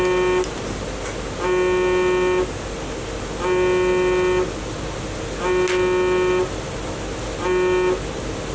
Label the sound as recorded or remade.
recorded